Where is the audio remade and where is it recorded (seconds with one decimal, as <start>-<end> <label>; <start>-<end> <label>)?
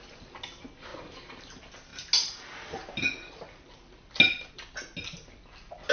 0.0-0.9 recorded; 0.9-1.5 remade; 1.5-5.9 recorded